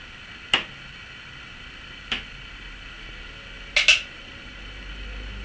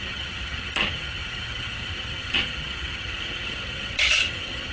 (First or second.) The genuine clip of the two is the first